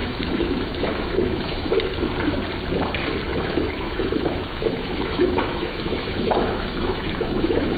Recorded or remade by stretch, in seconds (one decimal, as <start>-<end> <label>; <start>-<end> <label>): 0.0-1.7 remade; 1.7-3.3 recorded; 3.3-7.8 remade